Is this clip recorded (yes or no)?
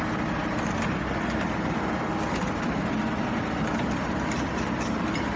no